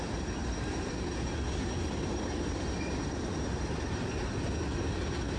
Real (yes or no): yes